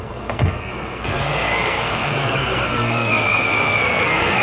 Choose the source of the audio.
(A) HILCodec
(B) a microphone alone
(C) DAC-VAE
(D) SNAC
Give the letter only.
D